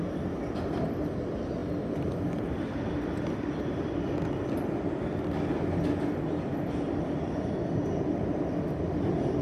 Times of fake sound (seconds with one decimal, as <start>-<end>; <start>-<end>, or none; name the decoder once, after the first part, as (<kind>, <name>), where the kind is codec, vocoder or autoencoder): none